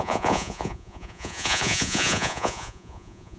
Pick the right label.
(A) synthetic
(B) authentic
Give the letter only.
A